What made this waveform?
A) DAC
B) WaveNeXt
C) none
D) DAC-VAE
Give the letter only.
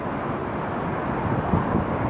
C